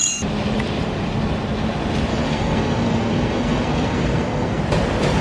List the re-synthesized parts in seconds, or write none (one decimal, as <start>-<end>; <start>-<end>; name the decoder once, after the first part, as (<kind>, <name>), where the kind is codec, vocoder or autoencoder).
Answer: 2.1-4.6 (codec, SNAC)